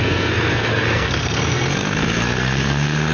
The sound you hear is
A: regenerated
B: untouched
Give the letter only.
A